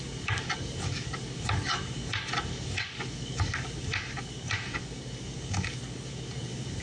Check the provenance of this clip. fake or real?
fake